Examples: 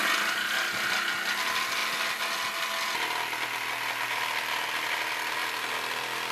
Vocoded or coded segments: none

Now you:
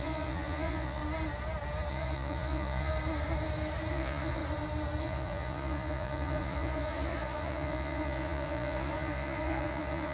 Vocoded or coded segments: 0.0-1.0; 1.9-2.9; 3.9-4.4; 5.0-10.1

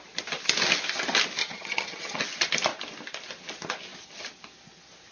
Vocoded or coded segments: 1.4-2.2

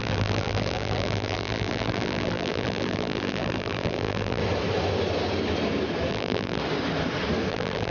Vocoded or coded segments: 0.0-4.4; 6.1-6.6; 7.5-7.9

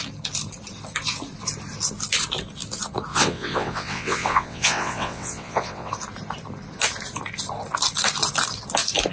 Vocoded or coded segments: 3.1-5.9

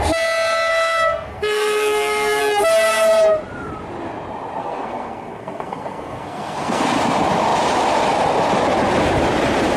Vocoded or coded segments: 0.7-2.4; 4.6-6.8

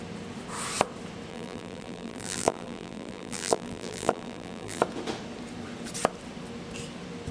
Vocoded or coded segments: 1.3-4.8